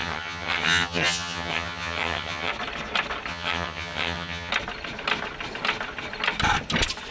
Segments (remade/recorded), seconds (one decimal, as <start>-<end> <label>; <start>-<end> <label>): 0.0-2.5 remade; 2.5-3.3 recorded; 3.3-4.5 remade; 4.5-7.1 recorded